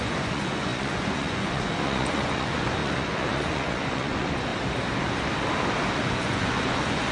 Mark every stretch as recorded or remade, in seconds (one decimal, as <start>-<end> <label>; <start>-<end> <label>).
0.0-4.5 remade; 4.5-5.9 recorded; 5.9-7.1 remade